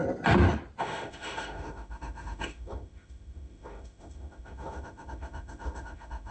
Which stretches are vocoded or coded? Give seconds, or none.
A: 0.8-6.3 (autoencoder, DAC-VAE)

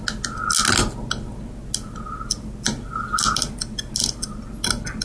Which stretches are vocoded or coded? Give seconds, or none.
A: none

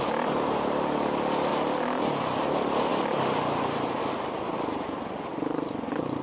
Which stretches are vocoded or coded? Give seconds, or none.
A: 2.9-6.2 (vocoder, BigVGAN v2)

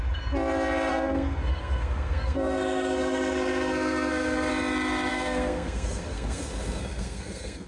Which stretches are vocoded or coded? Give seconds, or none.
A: 0.9-4.5 (codec, SNAC); 5.1-7.7

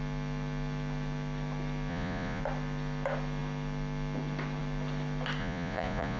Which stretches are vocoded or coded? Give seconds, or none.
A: 1.9-2.4 (vocoder, Vocos); 5.4-6.2